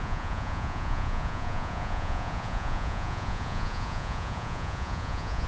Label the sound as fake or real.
fake